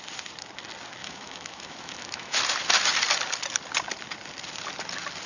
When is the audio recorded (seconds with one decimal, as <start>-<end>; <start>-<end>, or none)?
0.0-1.0; 2.4-5.3